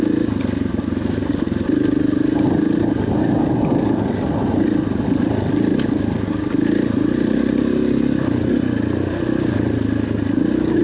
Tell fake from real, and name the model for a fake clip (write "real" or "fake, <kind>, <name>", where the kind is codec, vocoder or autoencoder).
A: real